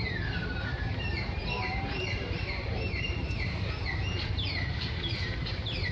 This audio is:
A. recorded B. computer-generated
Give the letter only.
B